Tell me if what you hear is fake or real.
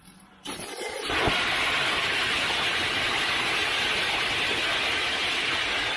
real